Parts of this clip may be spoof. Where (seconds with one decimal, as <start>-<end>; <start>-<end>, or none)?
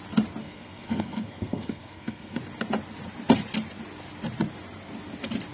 0.4-2.4